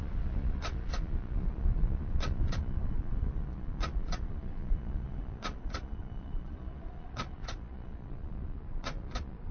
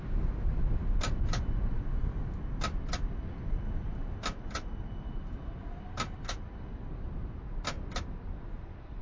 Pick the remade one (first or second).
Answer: first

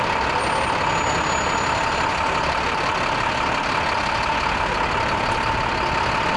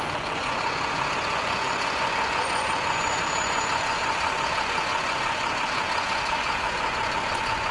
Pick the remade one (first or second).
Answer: second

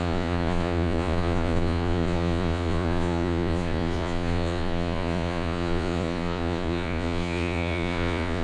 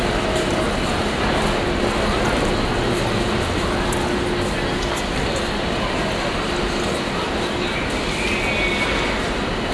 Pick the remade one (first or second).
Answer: first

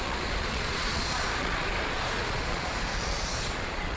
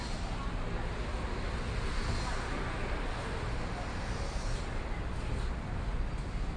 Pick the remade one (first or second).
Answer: first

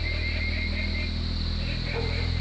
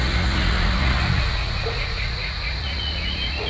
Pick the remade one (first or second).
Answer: second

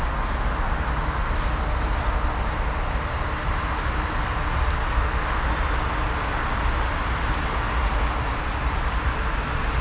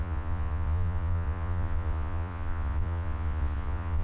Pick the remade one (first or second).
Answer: second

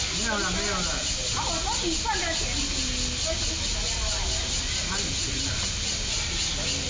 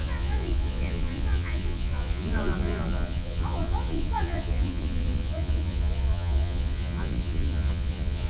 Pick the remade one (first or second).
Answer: second